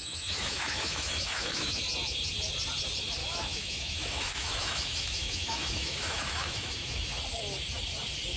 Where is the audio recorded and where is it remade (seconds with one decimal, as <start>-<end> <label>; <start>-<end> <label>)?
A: 0.0-1.8 remade; 1.8-3.2 recorded; 3.2-7.2 remade; 7.2-8.4 recorded